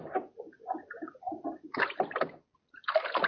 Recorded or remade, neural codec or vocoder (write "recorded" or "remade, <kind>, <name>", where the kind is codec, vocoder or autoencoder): recorded